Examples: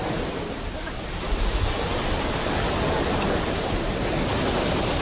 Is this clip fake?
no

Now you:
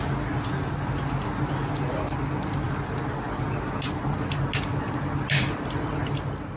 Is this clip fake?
no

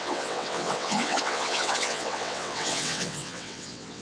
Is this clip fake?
yes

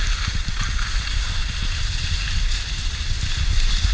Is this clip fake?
no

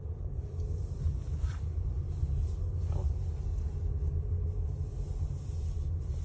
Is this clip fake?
no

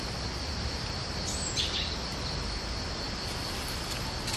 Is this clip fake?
no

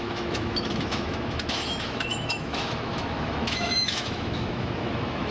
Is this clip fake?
yes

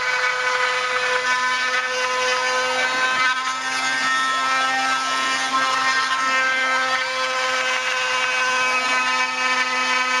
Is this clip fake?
no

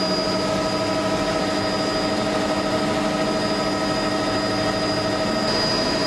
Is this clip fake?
no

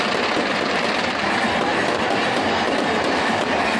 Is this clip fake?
yes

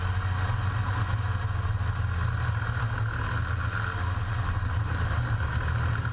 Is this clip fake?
no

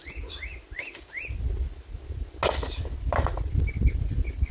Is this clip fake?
no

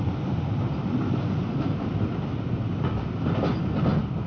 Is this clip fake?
no